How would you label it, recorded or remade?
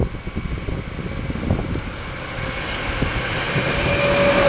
recorded